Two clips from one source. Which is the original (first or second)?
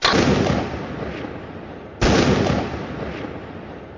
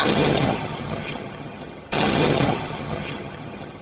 first